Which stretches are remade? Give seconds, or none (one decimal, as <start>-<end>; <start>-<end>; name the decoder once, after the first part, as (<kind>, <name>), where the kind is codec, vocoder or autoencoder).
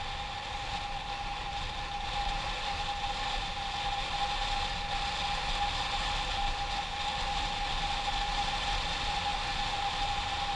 none